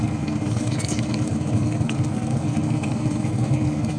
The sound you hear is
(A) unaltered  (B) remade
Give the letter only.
B